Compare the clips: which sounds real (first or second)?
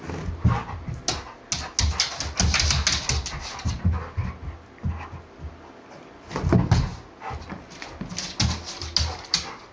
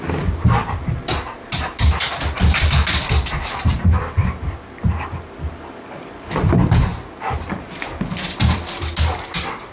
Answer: first